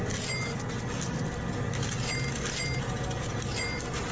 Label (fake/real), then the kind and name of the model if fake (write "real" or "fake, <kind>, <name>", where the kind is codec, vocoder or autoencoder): real